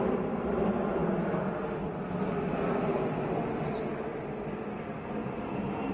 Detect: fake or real real